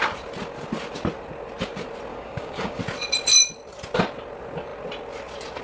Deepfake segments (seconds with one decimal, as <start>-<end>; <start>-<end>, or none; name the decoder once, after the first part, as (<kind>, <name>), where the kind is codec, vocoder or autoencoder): 2.1-2.8 (codec, DAC)